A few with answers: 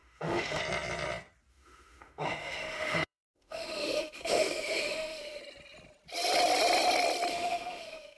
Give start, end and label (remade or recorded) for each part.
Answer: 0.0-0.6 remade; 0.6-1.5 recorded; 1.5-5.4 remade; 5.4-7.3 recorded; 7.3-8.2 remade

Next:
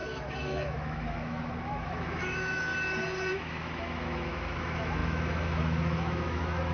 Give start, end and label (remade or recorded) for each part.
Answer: 0.0-2.7 remade; 2.7-3.3 recorded; 3.3-6.7 remade